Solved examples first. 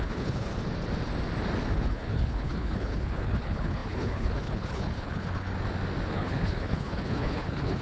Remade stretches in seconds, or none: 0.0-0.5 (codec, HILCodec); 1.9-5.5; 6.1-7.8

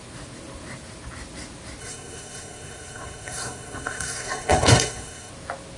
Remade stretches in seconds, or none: 1.8-5.3 (codec, SNAC)

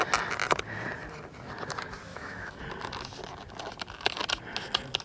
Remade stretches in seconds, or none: 2.1-2.6 (autoencoder, DAC-VAE)